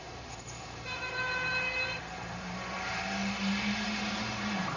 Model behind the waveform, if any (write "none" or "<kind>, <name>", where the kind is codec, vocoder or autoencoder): vocoder, BigVGAN v2